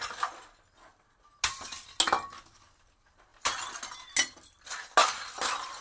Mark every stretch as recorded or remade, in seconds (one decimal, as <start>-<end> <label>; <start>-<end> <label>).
0.0-5.8 recorded